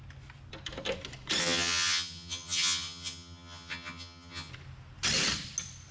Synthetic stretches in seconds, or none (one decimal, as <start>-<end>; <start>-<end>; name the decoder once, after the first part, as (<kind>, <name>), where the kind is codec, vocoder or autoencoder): 1.4-4.5 (vocoder, HiFi-GAN)